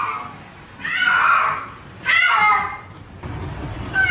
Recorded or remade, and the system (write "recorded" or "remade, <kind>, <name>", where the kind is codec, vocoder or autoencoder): recorded